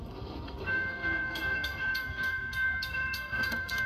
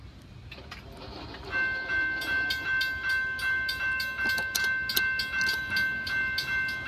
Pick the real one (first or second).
second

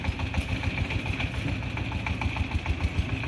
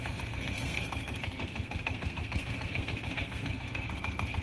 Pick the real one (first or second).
first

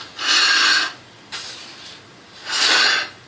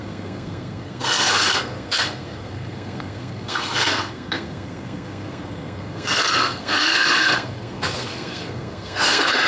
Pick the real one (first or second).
first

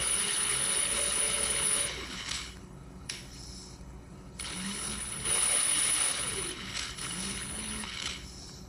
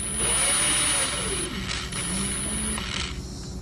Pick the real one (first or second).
second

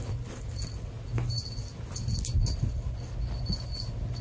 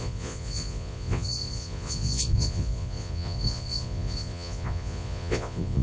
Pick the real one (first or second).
first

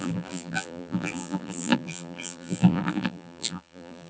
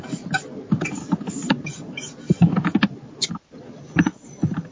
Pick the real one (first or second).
second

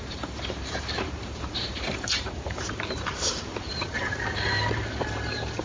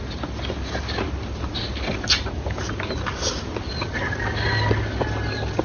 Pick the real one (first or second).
second